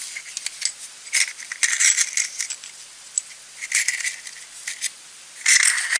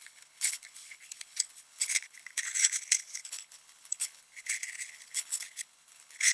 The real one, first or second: first